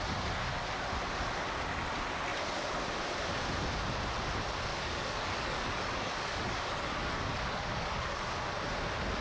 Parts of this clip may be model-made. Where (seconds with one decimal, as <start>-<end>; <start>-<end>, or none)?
4.7-8.4